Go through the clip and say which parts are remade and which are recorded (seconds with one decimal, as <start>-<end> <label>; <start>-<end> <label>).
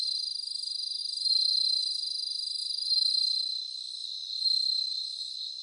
0.0-1.0 recorded; 1.0-1.8 remade; 1.8-2.6 recorded; 2.6-3.2 remade; 3.2-4.0 recorded; 4.0-4.5 remade; 4.5-5.6 recorded